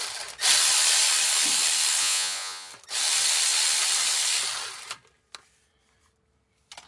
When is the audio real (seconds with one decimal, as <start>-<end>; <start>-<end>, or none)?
0.0-2.0; 2.7-6.9